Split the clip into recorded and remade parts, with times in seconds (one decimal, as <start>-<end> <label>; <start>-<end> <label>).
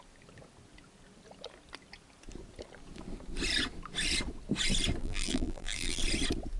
0.0-5.0 recorded; 5.0-6.0 remade; 6.0-6.6 recorded